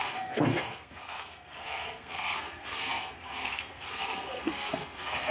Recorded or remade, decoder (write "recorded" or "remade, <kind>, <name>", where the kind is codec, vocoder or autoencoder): remade, codec, SNAC